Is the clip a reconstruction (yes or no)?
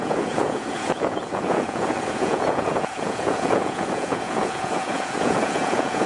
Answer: yes